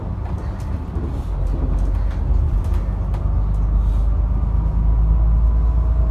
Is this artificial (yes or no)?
no